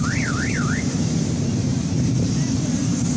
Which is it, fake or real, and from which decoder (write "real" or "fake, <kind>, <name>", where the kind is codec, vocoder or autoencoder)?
fake, vocoder, BigVGAN v2